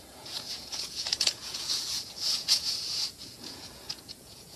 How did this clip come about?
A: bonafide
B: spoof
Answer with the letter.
B